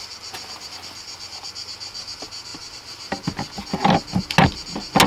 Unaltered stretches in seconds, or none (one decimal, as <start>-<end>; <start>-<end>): 0.0-5.1